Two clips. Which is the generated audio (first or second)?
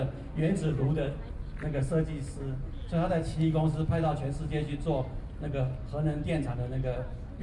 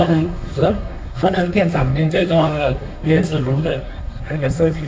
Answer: second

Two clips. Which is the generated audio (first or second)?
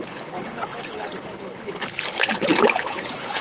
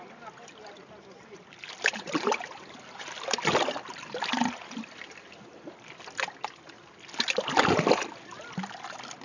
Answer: first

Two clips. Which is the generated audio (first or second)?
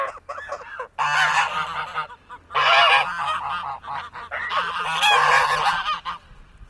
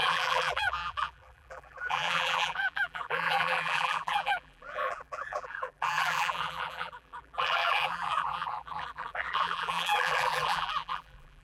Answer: second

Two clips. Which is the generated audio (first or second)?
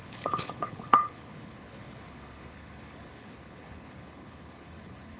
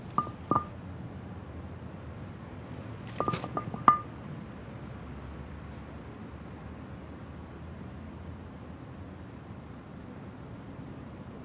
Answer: first